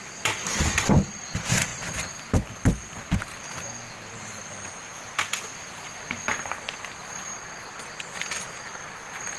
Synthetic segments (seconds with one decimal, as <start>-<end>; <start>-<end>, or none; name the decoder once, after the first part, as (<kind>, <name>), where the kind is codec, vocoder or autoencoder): none